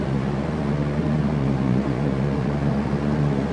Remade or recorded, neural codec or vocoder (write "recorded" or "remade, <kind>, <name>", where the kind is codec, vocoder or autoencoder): remade, vocoder, Vocos